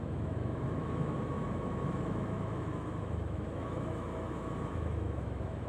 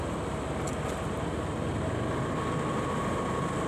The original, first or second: second